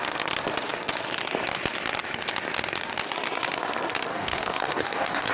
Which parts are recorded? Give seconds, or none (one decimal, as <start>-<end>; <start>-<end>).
0.0-4.1